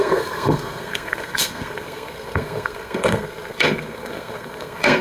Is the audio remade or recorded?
remade